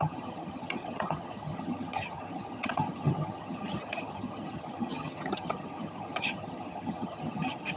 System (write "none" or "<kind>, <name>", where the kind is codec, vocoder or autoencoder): vocoder, HiFi-GAN